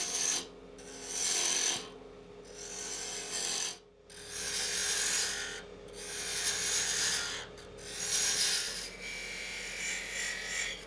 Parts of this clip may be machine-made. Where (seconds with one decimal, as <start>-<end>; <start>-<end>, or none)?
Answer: none